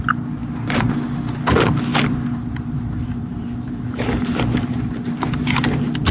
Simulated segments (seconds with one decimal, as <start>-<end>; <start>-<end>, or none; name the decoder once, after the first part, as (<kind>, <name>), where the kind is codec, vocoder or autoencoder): 1.9-5.6 (vocoder, BigVGAN v2)